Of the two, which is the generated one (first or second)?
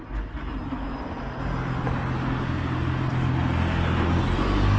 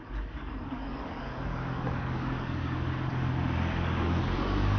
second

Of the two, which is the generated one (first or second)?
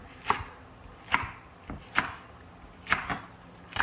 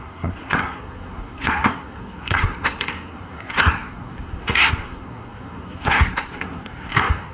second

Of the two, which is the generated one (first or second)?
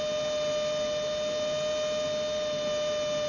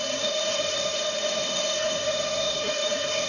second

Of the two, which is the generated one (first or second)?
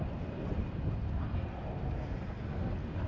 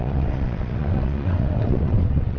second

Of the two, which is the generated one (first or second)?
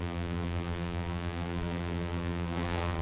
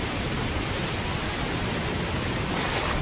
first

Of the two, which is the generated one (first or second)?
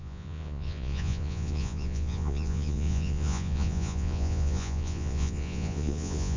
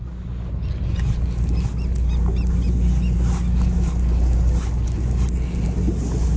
first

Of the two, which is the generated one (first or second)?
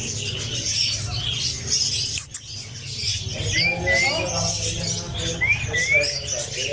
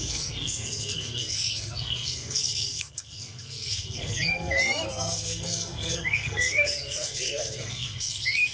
second